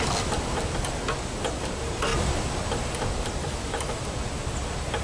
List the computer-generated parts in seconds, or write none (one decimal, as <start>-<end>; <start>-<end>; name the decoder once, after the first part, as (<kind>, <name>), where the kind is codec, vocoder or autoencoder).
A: 3.4-4.0 (autoencoder, DAC-VAE)

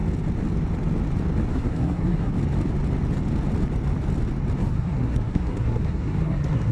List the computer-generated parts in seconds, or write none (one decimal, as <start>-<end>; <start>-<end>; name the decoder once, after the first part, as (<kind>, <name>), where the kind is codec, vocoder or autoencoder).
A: 1.5-2.3 (codec, SNAC); 4.6-6.7

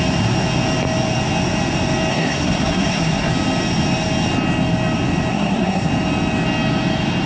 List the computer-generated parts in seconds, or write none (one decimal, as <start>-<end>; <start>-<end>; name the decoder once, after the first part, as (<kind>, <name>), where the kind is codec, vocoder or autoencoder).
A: 2.1-3.3 (codec, SNAC); 5.3-5.9

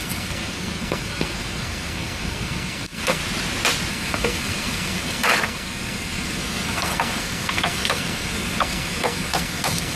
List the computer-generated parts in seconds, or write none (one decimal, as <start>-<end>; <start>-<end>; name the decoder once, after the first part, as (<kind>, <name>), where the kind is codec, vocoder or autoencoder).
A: 0.0-3.2 (codec, SNAC); 3.9-10.0